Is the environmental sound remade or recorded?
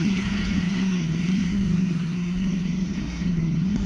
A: remade